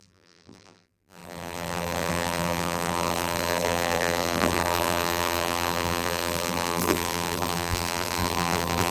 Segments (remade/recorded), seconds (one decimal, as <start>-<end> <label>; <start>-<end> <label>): 0.0-8.9 remade